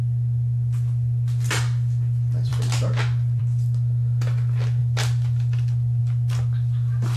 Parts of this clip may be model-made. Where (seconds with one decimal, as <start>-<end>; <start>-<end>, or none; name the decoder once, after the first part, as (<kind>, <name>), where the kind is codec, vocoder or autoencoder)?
none